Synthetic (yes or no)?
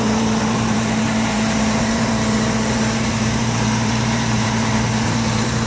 yes